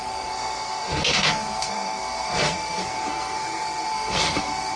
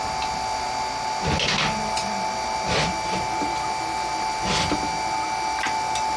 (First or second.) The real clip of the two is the second